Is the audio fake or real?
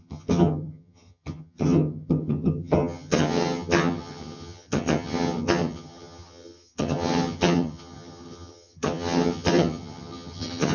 fake